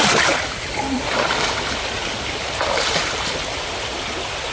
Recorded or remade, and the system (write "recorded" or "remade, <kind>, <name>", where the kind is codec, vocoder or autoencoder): remade, vocoder, BigVGAN v2